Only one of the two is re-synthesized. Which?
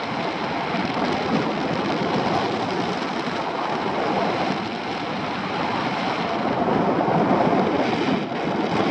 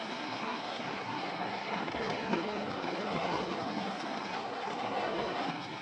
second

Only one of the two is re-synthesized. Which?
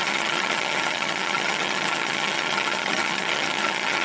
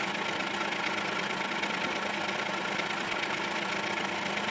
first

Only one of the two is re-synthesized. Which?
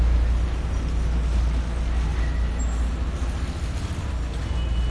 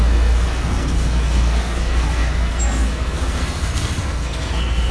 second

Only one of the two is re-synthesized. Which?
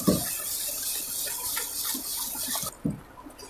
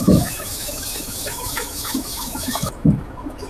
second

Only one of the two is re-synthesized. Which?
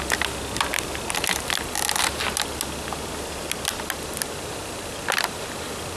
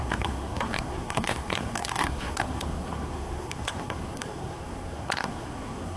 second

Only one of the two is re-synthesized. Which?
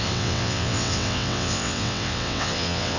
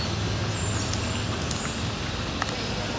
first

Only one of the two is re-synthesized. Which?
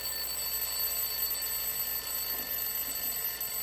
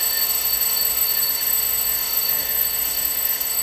second